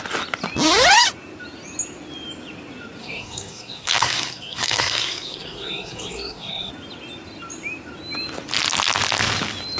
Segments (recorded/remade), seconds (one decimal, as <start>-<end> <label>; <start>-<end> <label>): 0.0-3.0 recorded; 3.0-6.7 remade; 6.7-9.8 recorded

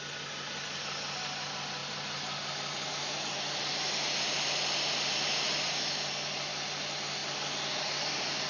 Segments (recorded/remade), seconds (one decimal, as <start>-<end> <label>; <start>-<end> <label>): 0.0-8.5 recorded